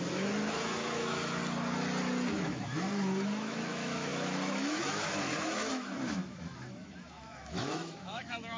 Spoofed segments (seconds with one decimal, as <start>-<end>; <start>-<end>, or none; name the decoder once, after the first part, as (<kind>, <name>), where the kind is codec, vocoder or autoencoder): 0.0-1.4 (autoencoder, DAC-VAE); 2.3-8.6

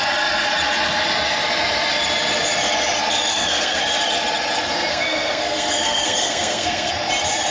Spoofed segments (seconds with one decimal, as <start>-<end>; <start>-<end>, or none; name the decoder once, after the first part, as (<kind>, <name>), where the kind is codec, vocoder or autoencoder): 3.3-3.8 (codec, SNAC); 4.9-6.9